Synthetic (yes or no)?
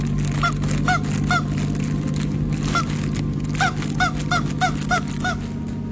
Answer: no